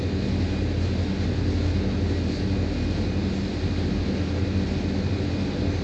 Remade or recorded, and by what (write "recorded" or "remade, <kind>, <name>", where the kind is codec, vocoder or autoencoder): recorded